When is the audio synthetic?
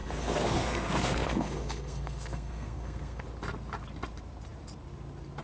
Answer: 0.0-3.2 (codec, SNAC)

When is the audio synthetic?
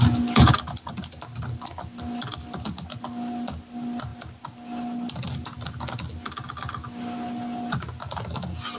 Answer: none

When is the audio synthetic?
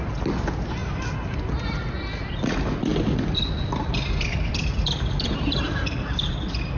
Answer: 0.8-1.4 (vocoder, BigVGAN v2); 2.9-6.3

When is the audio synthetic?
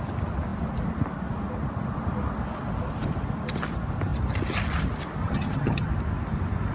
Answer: 5.2-5.9 (vocoder, HiFi-GAN)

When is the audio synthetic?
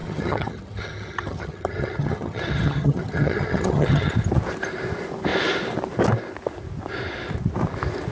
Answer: 0.0-4.1 (vocoder, HiFi-GAN)